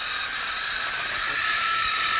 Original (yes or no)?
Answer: yes